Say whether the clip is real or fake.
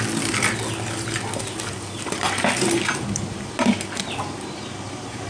real